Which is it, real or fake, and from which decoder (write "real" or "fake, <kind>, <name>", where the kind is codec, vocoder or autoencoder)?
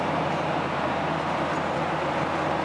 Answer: fake, vocoder, BigVGAN v2